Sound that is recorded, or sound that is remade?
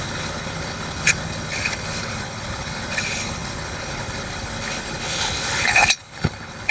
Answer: remade